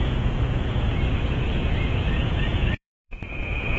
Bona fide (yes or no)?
no